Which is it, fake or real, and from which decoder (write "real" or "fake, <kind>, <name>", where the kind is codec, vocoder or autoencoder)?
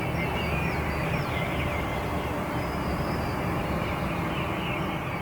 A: real